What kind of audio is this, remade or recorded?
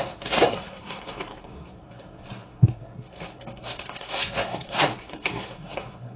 remade